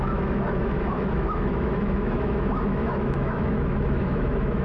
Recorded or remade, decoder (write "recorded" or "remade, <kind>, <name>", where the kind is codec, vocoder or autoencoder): remade, autoencoder, DAC-VAE